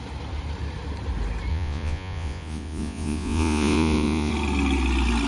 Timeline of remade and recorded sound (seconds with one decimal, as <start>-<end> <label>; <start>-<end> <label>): 0.0-1.5 recorded; 1.5-4.3 remade; 4.3-5.3 recorded